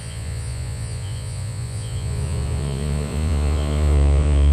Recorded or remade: remade